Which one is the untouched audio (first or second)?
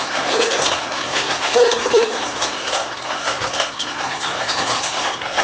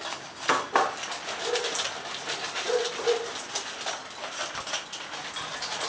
second